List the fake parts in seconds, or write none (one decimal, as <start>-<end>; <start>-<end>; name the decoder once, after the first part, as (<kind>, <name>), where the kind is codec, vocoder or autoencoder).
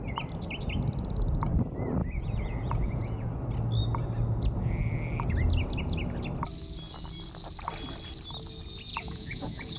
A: 2.0-3.3 (vocoder, Vocos); 8.9-9.8